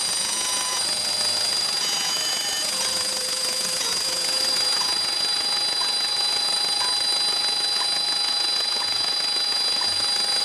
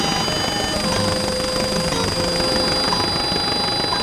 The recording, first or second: second